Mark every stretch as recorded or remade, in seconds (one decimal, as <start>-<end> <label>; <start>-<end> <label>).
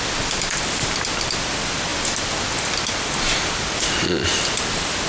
0.0-5.1 recorded